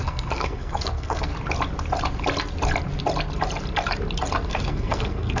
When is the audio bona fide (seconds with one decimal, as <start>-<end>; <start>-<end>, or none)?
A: 1.3-4.5